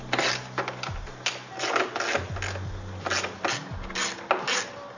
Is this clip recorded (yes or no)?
yes